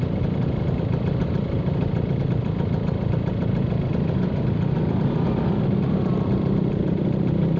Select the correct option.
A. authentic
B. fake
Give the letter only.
B